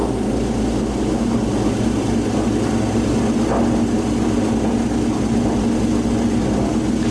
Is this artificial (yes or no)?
no